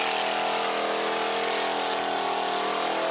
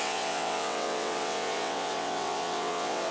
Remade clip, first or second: second